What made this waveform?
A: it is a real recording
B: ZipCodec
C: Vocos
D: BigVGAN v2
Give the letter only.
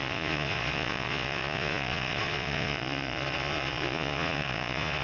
C